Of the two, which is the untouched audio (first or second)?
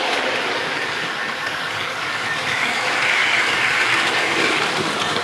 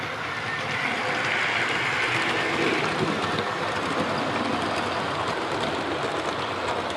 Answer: second